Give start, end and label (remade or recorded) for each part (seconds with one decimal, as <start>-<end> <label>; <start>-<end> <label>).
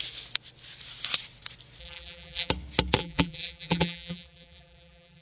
0.0-1.8 recorded; 1.8-2.5 remade; 2.5-3.0 recorded; 3.0-5.2 remade